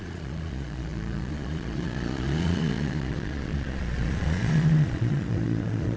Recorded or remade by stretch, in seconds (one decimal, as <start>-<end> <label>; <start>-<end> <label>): 0.0-6.0 remade